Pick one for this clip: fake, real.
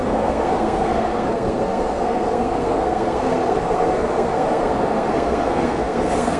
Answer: fake